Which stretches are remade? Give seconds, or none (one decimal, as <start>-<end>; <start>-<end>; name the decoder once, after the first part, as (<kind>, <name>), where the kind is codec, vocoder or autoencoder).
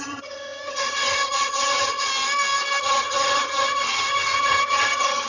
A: 0.0-2.1 (vocoder, HiFi-GAN); 2.8-5.3